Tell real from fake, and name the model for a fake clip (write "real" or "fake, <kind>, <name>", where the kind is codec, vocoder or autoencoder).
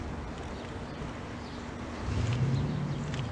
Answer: real